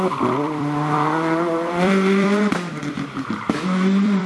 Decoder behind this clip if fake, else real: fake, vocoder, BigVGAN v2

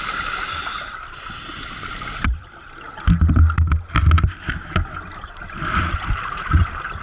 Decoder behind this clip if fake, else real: fake, vocoder, BigVGAN v2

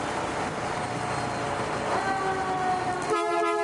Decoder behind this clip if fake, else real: real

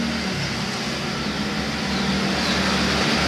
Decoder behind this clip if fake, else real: real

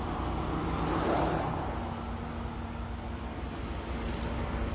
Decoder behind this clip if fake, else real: real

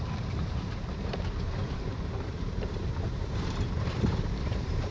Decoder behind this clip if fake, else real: fake, vocoder, BigVGAN v2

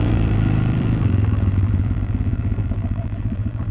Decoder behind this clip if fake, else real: fake, vocoder, BigVGAN v2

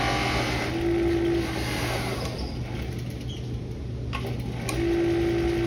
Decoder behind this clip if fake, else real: real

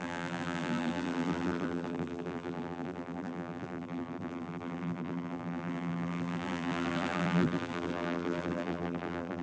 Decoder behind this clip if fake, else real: fake, vocoder, BigVGAN v2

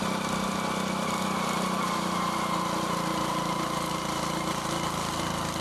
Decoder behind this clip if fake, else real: real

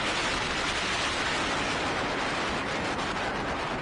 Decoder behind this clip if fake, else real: real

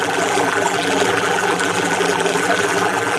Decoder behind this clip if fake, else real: fake, vocoder, BigVGAN v2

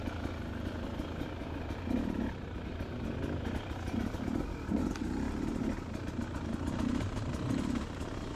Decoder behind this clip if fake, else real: real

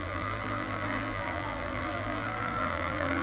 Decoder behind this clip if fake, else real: fake, vocoder, BigVGAN v2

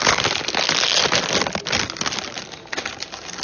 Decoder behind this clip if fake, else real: real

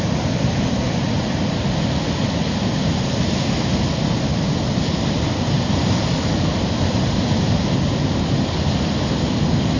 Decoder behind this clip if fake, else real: real